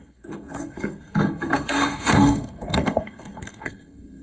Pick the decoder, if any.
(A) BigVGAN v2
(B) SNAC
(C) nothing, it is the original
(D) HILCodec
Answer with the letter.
B